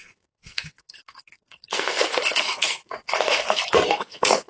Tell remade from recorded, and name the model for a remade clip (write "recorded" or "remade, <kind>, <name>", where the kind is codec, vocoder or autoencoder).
remade, codec, SNAC